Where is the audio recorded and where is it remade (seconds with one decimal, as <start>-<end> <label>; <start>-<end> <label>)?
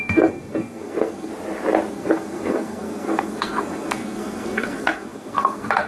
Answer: 0.0-1.3 remade; 1.3-1.9 recorded; 1.9-5.9 remade